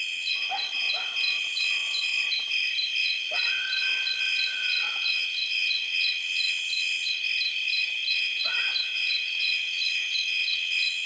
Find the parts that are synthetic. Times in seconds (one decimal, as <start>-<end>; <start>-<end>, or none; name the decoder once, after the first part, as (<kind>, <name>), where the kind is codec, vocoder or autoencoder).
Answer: 0.0-2.1 (vocoder, WaveNeXt); 3.0-7.2; 8.1-11.1